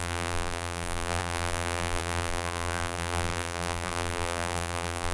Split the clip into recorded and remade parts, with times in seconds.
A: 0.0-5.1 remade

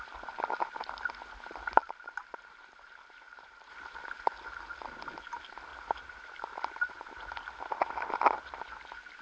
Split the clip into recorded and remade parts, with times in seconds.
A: 0.0-1.8 recorded; 1.8-3.7 remade; 3.7-5.7 recorded; 5.7-7.1 remade; 7.1-9.2 recorded

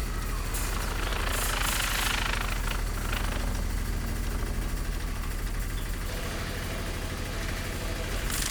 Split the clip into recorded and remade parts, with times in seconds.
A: 0.0-8.5 recorded

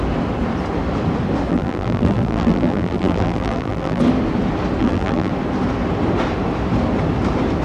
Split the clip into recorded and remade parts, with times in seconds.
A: 0.0-1.5 recorded; 1.5-4.0 remade; 4.0-4.8 recorded; 4.8-5.3 remade; 5.3-7.6 recorded

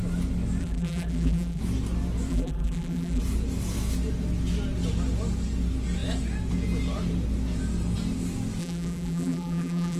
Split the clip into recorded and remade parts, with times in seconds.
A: 0.0-0.6 recorded; 0.6-1.6 remade; 1.6-2.3 recorded; 2.3-3.2 remade; 3.2-8.6 recorded; 8.6-10.0 remade

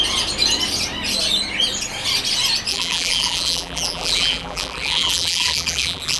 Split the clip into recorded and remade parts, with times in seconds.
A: 0.0-2.7 recorded; 2.7-6.2 remade

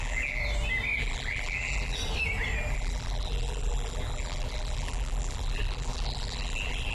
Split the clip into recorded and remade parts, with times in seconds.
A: 0.0-0.4 remade; 0.4-1.0 recorded; 1.0-2.0 remade; 2.0-2.7 recorded; 2.7-6.9 remade

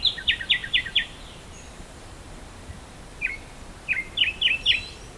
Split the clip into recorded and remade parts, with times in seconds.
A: 0.0-0.6 recorded; 0.6-3.7 remade; 3.7-5.2 recorded